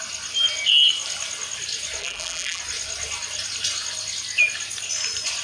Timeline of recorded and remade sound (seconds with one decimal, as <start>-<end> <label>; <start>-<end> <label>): 0.0-2.0 recorded; 2.0-2.6 remade; 2.6-5.4 recorded